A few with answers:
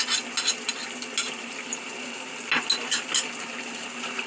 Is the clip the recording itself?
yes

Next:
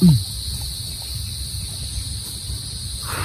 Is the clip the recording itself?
yes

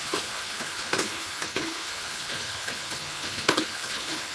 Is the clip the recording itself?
no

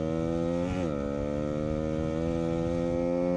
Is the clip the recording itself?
yes